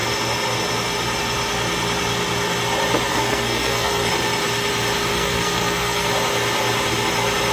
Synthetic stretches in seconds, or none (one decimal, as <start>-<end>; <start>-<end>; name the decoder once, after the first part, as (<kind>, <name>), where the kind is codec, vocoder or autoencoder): 3.1-4.1 (codec, SNAC); 5.1-6.1